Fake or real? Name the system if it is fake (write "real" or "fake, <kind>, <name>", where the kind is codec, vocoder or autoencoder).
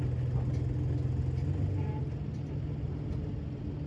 real